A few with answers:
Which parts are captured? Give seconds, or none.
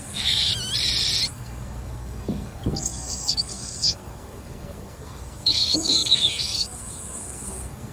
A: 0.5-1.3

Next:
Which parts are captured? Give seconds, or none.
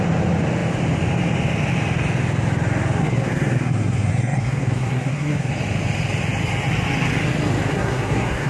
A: 0.0-3.0; 5.5-7.7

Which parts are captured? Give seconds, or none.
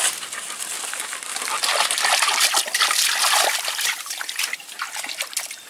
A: 0.0-5.7